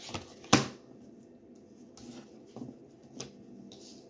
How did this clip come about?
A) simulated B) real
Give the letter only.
B